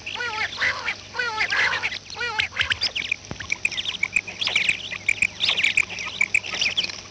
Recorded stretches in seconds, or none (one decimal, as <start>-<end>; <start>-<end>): 0.0-7.1